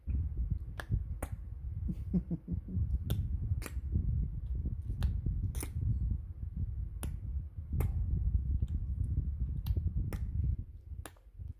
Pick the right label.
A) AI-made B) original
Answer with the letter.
B